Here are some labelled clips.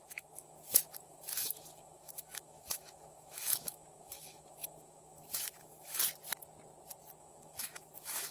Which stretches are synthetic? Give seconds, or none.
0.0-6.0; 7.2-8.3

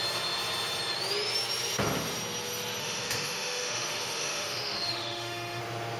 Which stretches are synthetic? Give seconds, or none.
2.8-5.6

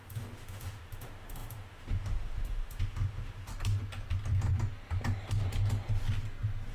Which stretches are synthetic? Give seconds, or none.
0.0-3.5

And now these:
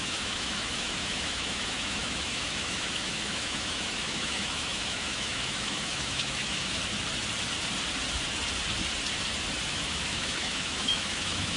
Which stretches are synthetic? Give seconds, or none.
0.0-6.8; 9.7-11.6